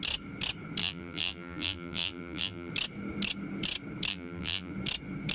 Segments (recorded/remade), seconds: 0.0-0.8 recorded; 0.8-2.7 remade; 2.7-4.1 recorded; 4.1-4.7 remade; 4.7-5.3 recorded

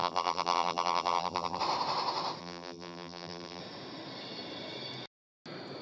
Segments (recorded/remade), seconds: 0.0-1.6 remade; 1.6-2.4 recorded; 2.4-3.6 remade; 3.6-5.8 recorded

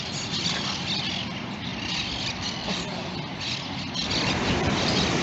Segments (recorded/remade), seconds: 0.0-5.2 recorded

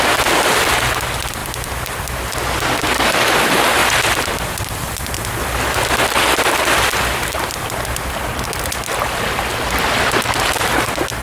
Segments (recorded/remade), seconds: 0.0-11.2 recorded

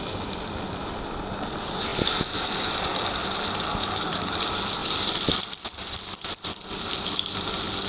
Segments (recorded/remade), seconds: 0.0-1.9 remade; 1.9-2.4 recorded; 2.4-4.8 remade; 4.8-6.8 recorded; 6.8-7.9 remade